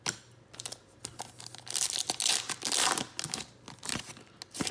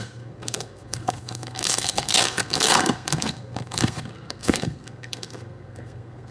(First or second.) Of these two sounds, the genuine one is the first